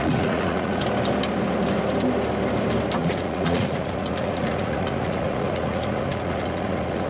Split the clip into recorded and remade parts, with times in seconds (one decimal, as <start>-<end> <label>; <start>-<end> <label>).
0.0-0.8 remade; 0.8-3.0 recorded; 3.0-7.1 remade